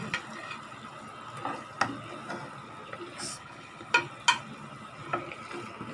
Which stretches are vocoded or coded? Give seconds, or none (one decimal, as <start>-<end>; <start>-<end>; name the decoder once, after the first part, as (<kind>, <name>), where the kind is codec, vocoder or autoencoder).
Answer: 3.3-3.9 (codec, HILCodec)